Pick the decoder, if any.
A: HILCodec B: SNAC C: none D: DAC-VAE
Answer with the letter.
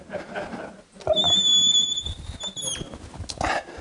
C